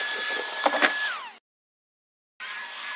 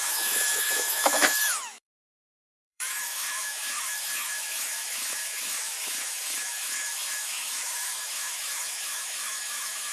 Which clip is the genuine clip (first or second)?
first